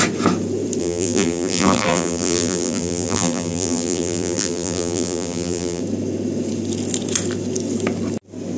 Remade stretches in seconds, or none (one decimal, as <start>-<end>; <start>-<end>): 0.8-5.8